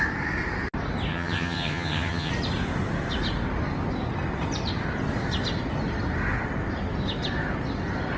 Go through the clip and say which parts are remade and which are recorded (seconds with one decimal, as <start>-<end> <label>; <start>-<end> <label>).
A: 0.0-1.1 recorded; 1.1-2.3 remade; 2.3-8.2 recorded